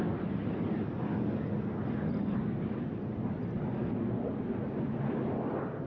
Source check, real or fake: real